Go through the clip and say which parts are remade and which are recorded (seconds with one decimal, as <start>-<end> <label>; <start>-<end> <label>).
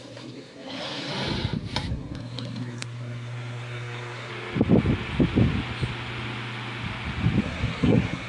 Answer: 0.0-1.1 remade; 1.1-1.9 recorded; 1.9-4.3 remade; 4.3-7.4 recorded; 7.4-8.3 remade